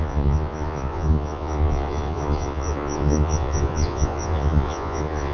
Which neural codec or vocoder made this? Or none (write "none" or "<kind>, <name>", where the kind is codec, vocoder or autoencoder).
vocoder, Vocos